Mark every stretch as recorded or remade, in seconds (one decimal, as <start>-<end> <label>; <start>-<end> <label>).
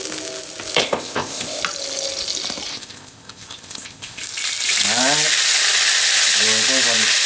0.0-0.8 recorded; 0.8-1.6 remade; 1.6-2.7 recorded; 2.7-4.2 remade; 4.2-7.3 recorded